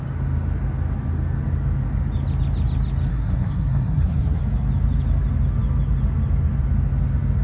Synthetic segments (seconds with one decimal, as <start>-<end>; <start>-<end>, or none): 3.1-4.4

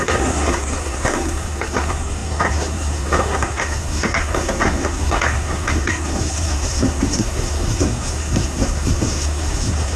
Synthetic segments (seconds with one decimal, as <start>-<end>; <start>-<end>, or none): 0.0-10.0

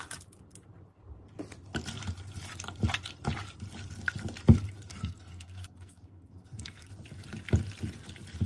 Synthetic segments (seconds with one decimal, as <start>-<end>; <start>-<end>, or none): 4.9-6.9